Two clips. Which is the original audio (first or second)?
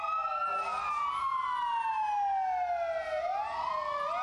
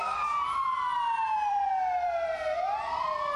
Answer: first